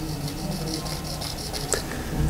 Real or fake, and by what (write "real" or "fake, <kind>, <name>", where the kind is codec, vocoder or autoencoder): real